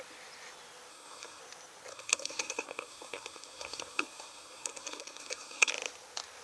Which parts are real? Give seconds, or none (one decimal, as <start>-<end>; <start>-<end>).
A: 0.0-0.9; 1.4-1.9; 5.7-6.4